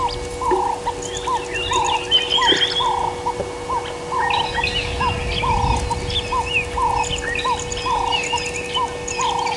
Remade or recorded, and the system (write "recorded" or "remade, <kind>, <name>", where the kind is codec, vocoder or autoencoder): recorded